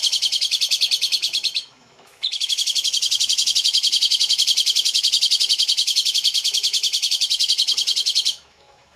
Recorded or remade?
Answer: remade